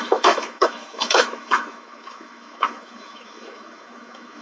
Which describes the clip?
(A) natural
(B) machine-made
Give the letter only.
B